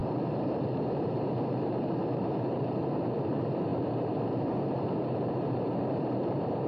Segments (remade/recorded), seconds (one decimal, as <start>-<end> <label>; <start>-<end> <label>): 0.0-6.7 remade